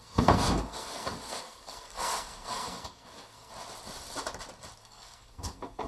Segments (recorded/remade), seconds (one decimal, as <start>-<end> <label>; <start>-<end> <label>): 0.0-3.5 remade; 3.5-4.8 recorded; 4.8-5.9 remade